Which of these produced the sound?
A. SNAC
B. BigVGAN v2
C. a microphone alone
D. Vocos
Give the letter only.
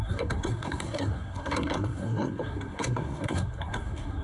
A